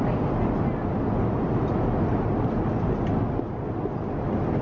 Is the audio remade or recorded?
recorded